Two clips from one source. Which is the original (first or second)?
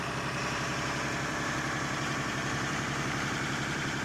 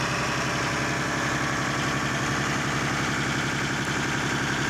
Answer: second